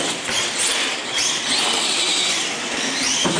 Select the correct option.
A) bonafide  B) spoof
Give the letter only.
A